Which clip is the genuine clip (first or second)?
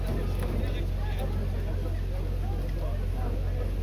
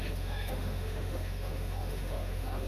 first